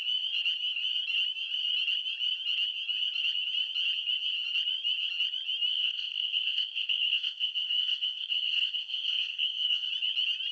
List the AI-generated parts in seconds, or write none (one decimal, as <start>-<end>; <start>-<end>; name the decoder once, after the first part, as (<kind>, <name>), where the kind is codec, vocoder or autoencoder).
5.7-9.9 (codec, SNAC)

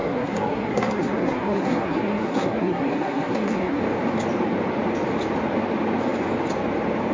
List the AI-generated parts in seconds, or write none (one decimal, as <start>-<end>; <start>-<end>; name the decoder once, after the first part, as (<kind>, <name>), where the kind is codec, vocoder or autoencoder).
0.0-3.8 (codec, SNAC)

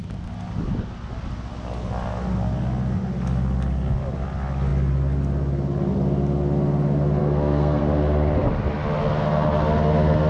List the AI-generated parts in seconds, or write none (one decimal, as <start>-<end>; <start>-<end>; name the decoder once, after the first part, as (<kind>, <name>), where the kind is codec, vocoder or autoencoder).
7.2-7.8 (codec, SNAC)

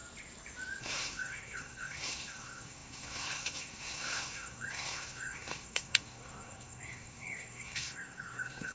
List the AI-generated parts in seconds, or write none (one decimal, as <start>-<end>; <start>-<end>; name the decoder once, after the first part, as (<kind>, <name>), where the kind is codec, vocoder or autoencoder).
0.8-8.7 (codec, SNAC)